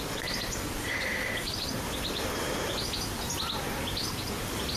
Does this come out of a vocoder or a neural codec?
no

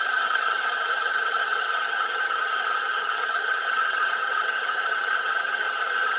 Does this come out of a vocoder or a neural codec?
yes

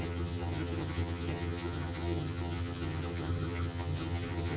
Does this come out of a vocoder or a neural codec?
yes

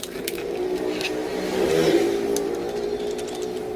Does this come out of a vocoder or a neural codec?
no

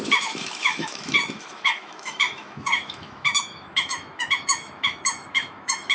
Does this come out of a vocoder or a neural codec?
yes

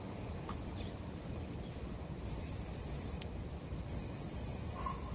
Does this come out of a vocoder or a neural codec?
no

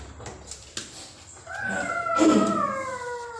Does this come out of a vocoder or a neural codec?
no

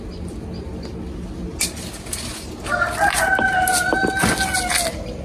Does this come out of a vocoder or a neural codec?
no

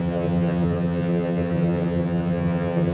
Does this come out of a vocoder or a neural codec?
yes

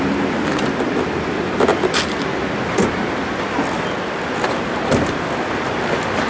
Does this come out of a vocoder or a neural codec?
no